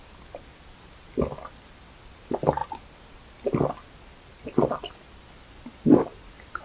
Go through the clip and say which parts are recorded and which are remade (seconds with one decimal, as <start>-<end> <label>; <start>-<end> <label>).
0.0-6.6 recorded